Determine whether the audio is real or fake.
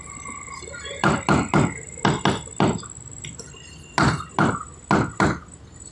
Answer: real